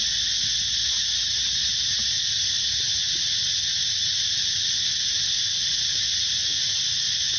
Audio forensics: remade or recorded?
recorded